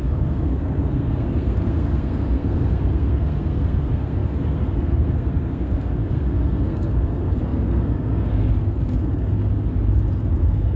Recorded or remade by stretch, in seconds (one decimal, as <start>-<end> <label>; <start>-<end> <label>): 0.0-9.4 remade; 9.4-10.3 recorded; 10.3-10.8 remade